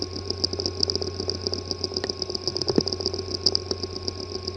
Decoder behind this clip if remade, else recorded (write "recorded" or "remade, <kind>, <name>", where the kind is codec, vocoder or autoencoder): recorded